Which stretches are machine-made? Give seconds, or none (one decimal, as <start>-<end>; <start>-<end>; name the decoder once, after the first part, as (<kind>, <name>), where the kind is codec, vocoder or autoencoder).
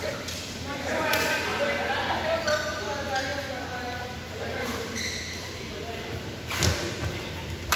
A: none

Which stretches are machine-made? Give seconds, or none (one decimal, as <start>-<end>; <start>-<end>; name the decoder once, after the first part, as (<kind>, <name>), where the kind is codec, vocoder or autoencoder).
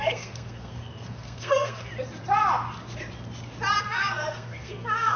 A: 0.0-1.9 (codec, SNAC); 3.8-5.2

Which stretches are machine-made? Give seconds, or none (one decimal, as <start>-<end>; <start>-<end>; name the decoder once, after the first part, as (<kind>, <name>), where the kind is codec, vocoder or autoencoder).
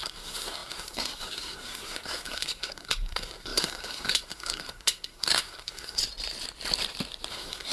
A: 0.0-6.0 (codec, SNAC); 7.3-7.7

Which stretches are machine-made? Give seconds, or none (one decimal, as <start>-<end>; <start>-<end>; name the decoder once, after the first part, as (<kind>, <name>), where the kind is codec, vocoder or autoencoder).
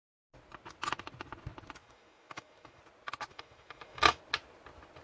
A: 1.8-2.8 (autoencoder, DAC-VAE); 3.3-4.2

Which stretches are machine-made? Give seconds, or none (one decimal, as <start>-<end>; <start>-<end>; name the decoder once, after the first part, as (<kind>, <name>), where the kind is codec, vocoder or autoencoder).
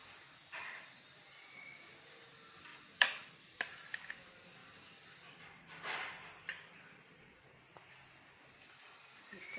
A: 0.0-0.6 (vocoder, BigVGAN v2); 2.7-4.1; 4.6-8.3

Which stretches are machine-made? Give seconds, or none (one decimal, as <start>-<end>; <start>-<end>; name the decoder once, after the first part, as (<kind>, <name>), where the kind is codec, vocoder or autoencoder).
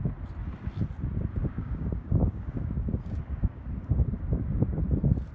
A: 1.4-4.6 (codec, DAC)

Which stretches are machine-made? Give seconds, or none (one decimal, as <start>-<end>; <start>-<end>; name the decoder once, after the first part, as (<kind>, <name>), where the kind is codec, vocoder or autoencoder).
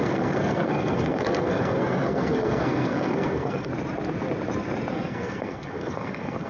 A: 0.0-3.7 (codec, SNAC); 4.9-6.5